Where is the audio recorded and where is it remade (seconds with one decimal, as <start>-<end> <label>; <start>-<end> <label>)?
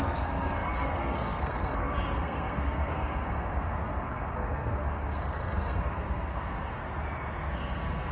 0.0-6.8 remade; 6.8-7.5 recorded; 7.5-8.1 remade